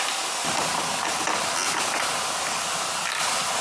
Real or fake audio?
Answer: real